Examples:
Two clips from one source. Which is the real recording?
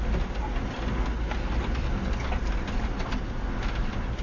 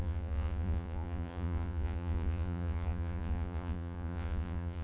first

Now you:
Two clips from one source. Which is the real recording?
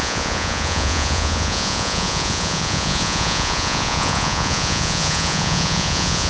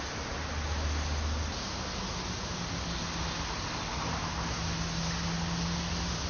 second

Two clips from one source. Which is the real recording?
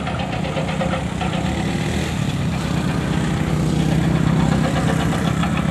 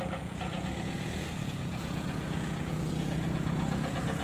first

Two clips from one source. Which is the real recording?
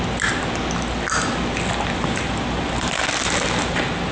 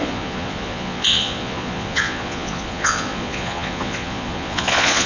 first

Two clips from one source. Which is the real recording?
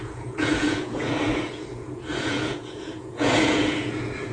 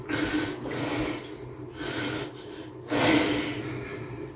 second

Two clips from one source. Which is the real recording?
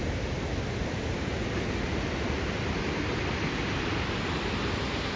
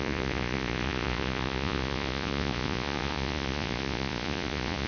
first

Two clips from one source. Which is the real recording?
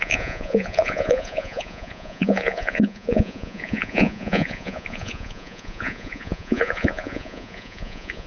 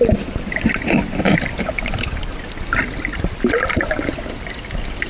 second